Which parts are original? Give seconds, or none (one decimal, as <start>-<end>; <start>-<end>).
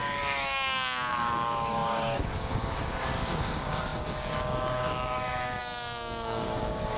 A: none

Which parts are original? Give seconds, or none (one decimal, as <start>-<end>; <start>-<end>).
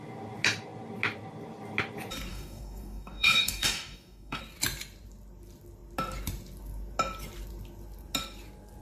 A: 0.0-2.3; 4.4-8.8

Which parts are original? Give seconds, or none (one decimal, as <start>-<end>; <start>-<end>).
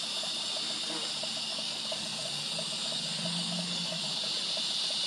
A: 0.0-1.5; 4.0-5.1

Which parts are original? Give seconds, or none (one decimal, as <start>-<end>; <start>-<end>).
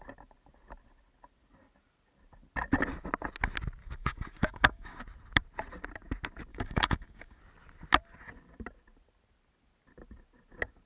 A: 0.0-3.8; 5.0-6.5; 7.4-10.9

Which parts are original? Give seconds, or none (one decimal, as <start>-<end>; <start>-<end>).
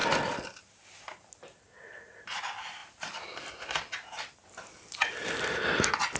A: 0.0-6.2